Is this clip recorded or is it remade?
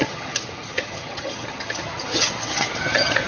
remade